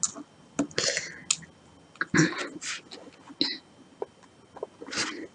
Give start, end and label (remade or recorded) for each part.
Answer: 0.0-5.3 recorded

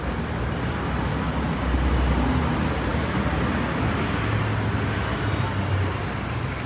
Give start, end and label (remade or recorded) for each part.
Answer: 0.0-6.7 recorded

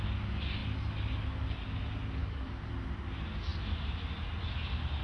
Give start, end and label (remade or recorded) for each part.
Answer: 0.0-2.2 recorded; 2.2-2.7 remade; 2.7-5.0 recorded

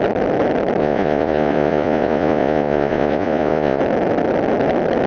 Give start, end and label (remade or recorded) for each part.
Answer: 0.0-0.8 recorded; 0.8-3.8 remade; 3.8-5.1 recorded

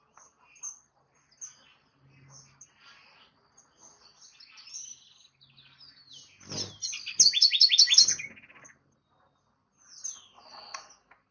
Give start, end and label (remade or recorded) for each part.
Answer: 0.0-11.3 recorded

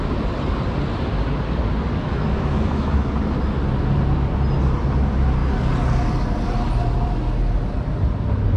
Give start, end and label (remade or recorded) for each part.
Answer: 0.0-1.9 recorded; 1.9-3.1 remade; 3.1-8.6 recorded

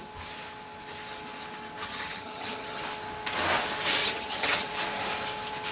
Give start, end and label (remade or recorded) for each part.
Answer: 0.0-1.8 recorded; 1.8-2.8 remade; 2.8-4.0 recorded; 4.0-4.7 remade; 4.7-5.7 recorded

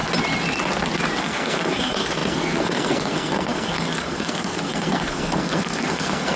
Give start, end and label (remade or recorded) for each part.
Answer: 0.0-1.2 recorded; 1.2-6.4 remade